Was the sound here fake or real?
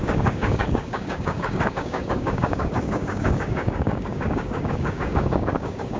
fake